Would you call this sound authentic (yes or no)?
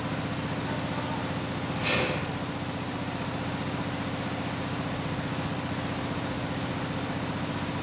yes